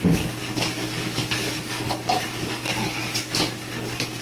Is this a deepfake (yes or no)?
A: yes